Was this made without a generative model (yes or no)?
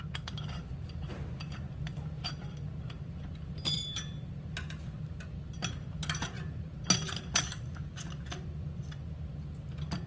yes